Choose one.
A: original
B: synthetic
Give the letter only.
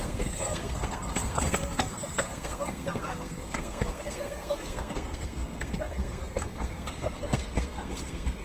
B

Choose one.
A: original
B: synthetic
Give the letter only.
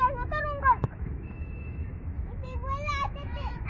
B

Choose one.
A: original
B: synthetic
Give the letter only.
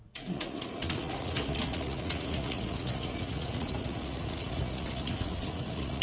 B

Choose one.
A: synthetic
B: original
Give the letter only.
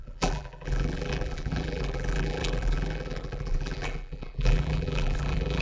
A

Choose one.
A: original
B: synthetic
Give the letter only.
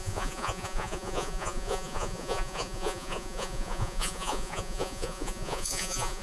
B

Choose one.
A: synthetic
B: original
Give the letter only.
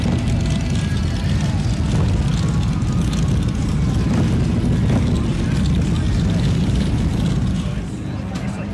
B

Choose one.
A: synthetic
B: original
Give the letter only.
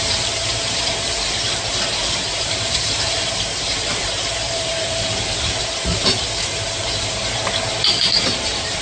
A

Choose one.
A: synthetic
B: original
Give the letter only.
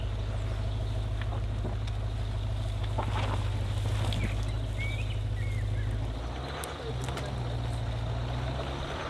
B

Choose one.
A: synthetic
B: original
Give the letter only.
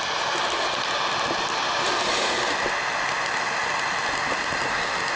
B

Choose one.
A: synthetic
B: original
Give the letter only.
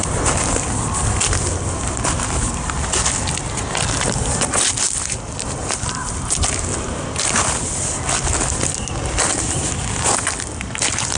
B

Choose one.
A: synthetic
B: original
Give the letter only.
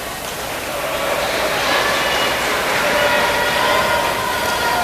B